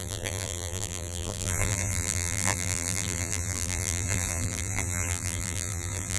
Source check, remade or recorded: remade